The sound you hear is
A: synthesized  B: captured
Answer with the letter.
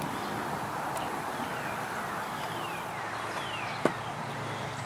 B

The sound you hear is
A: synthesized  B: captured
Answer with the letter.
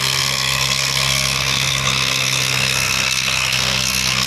A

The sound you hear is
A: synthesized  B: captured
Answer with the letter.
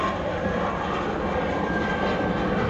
B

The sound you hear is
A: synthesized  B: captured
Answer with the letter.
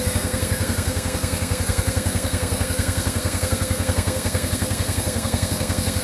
A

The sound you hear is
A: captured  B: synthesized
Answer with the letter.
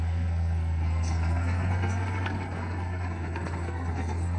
B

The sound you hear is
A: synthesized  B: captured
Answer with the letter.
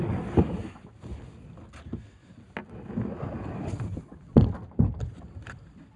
B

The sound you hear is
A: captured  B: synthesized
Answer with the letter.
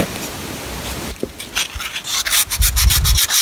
A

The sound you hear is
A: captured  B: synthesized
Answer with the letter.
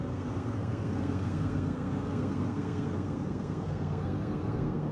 B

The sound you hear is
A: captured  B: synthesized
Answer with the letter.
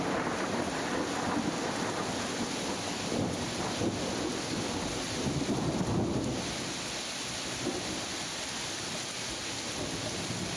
A